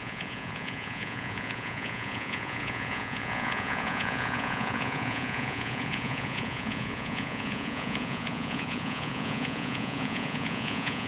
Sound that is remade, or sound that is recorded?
remade